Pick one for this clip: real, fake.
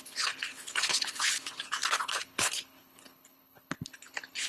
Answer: fake